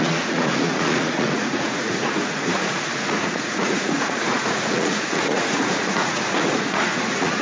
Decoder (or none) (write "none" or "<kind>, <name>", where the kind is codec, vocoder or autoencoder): vocoder, Vocos